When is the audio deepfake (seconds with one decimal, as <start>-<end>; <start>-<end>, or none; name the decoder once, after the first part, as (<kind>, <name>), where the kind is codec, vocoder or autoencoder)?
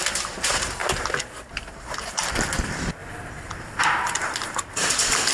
0.0-0.8 (vocoder, BigVGAN v2); 1.5-5.3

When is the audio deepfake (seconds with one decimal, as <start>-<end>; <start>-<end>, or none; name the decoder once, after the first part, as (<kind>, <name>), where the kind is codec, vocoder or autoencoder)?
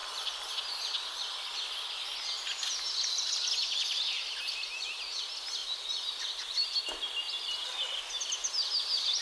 0.0-0.5 (vocoder, BigVGAN v2); 5.6-6.8; 8.4-9.2